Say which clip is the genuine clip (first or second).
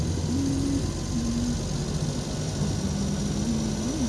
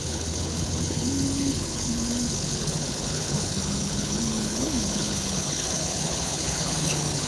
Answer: first